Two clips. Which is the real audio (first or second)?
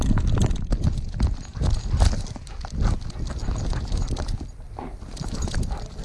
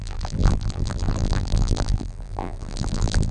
first